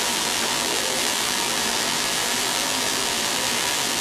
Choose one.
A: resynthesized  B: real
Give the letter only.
A